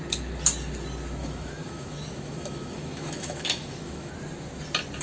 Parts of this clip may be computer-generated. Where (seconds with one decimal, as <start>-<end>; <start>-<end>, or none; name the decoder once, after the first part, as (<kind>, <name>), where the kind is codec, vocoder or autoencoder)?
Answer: 1.2-4.1 (autoencoder, DAC-VAE)